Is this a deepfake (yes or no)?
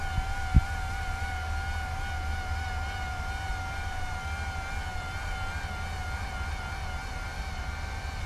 no